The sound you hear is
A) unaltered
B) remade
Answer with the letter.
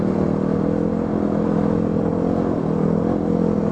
A